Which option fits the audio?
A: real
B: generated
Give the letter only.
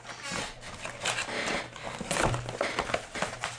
A